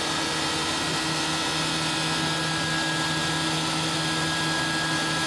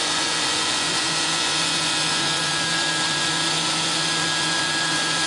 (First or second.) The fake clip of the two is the second